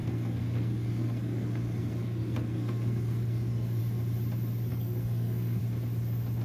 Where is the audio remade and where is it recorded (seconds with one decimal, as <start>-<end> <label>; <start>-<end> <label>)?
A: 0.0-3.8 remade; 3.8-4.7 recorded; 4.7-5.6 remade; 5.6-6.4 recorded